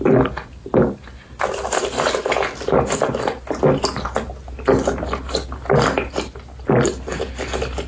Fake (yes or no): no